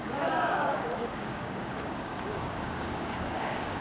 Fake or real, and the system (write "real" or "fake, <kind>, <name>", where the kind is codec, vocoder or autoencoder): fake, codec, DAC